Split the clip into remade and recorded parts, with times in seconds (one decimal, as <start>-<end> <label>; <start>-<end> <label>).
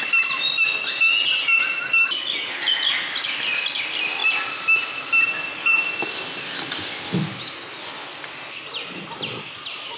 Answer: 0.0-10.0 recorded